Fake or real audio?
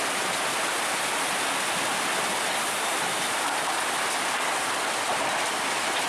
real